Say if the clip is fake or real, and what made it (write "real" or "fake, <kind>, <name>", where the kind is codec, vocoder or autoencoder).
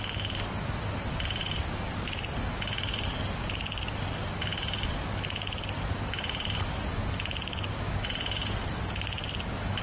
real